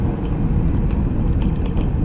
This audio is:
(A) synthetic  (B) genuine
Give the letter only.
B